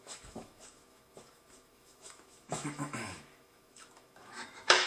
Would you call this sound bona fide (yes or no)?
no